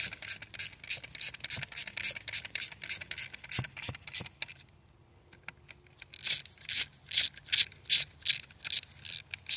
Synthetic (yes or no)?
no